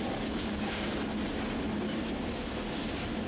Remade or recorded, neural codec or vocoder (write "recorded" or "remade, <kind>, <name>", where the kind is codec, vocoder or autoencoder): recorded